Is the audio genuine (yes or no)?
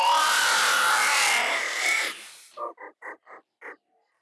yes